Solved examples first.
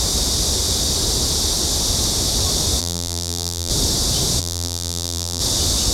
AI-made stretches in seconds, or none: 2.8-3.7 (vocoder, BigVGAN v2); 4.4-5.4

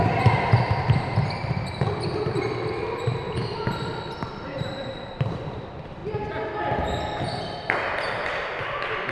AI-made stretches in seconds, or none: 0.0-6.0 (vocoder, BigVGAN v2); 8.6-9.1

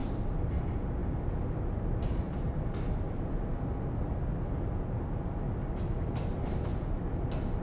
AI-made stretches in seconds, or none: none

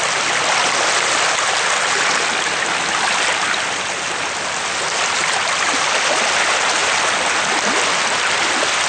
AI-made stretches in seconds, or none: none